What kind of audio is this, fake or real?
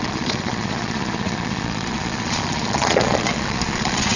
fake